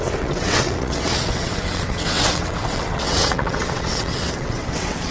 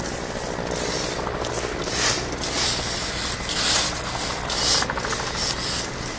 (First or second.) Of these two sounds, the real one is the second